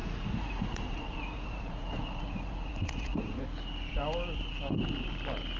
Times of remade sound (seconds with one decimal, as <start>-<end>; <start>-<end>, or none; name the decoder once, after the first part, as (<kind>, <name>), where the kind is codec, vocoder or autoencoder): 0.0-3.4 (vocoder, Vocos)